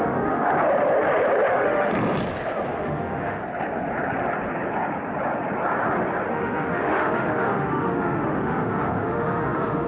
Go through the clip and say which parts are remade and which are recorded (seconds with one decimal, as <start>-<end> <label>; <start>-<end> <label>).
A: 0.0-0.5 remade; 0.5-1.5 recorded; 1.5-1.9 remade; 1.9-2.7 recorded; 2.7-3.4 remade; 3.4-6.3 recorded; 6.3-9.9 remade